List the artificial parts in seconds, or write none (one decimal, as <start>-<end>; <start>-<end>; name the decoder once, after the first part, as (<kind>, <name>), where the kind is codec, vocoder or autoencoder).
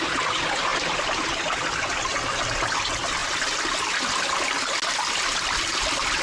0.7-1.5 (vocoder, BigVGAN v2)